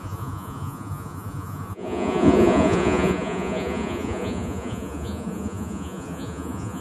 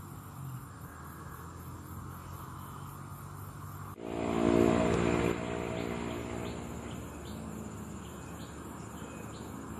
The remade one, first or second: first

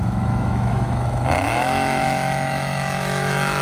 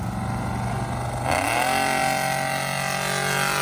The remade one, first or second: first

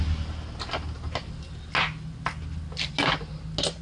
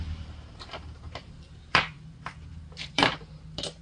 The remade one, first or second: second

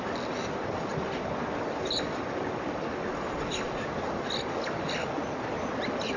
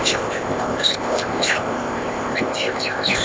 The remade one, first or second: second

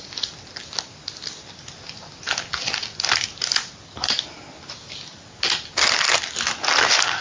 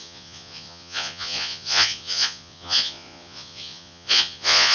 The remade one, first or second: second